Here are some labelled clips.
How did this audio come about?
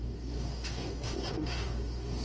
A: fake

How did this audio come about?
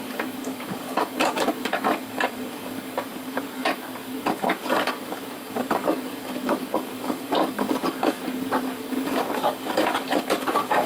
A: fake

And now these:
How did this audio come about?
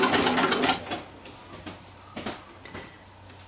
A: real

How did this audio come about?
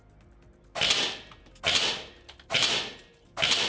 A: real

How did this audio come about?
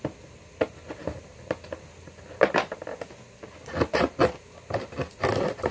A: real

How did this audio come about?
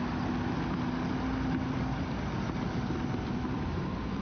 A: real